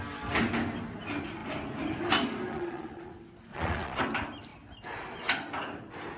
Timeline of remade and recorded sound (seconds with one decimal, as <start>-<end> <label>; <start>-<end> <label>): 0.0-2.5 recorded; 2.5-3.1 remade; 3.1-3.5 recorded; 3.5-4.0 remade; 4.0-6.2 recorded